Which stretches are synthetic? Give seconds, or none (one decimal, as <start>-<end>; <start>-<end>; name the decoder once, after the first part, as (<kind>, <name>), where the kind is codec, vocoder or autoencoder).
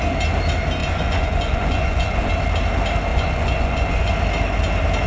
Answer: 0.8-2.3 (vocoder, Vocos); 3.1-4.1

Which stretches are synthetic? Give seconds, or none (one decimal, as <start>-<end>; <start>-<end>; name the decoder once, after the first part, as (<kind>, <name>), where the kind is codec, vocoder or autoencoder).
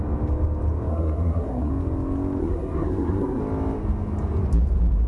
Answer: 0.9-1.7 (codec, SNAC); 2.4-3.4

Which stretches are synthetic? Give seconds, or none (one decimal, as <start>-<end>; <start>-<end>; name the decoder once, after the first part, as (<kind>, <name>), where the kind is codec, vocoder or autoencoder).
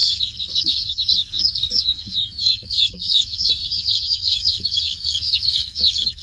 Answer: 0.0-6.2 (codec, SNAC)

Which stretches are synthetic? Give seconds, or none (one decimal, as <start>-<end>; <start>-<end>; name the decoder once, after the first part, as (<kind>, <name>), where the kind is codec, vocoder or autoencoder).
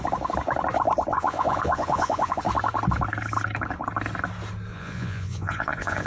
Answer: 1.1-2.4 (vocoder, Vocos); 4.7-6.1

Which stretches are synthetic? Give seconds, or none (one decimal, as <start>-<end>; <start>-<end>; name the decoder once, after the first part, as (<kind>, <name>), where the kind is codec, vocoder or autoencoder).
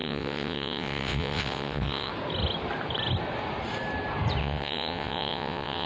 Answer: 0.0-2.1 (vocoder, WaveNeXt); 4.4-5.9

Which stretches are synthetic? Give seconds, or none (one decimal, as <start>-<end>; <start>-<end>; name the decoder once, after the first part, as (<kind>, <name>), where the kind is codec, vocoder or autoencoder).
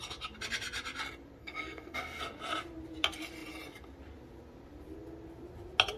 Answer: 1.4-2.2 (codec, SNAC)